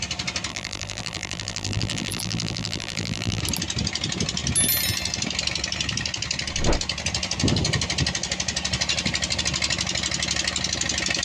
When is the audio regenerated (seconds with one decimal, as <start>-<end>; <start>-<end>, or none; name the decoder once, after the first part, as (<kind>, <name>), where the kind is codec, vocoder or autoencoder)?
0.5-3.4 (vocoder, BigVGAN v2)